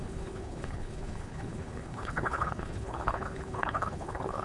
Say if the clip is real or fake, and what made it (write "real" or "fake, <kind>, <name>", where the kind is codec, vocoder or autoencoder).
fake, codec, HILCodec